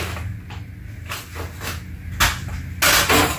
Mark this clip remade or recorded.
recorded